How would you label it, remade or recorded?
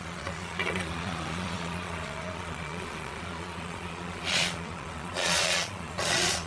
remade